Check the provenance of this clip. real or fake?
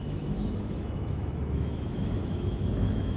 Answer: fake